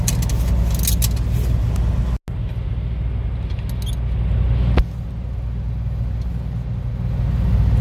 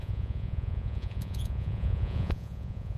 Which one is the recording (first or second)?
first